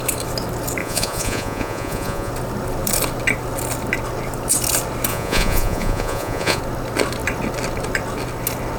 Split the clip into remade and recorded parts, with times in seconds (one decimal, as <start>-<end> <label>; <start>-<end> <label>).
0.0-0.8 recorded; 0.8-2.3 remade; 2.3-5.1 recorded; 5.1-6.6 remade; 6.6-8.8 recorded